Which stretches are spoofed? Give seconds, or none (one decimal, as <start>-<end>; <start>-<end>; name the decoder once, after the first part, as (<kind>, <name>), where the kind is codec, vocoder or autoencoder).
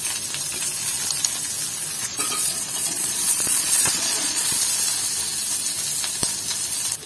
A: 2.0-4.6 (vocoder, Vocos)